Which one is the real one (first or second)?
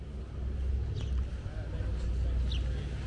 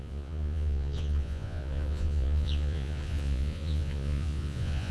first